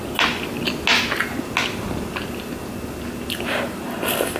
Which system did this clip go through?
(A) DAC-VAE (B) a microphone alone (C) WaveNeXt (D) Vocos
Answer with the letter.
B